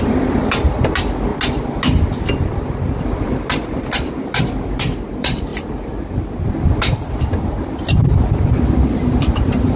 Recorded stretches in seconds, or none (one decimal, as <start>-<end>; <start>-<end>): 1.3-2.3